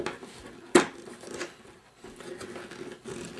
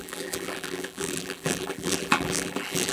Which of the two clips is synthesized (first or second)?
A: second